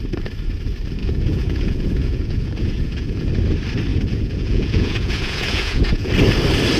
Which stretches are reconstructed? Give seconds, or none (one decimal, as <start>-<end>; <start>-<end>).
1.0-3.3; 3.9-6.1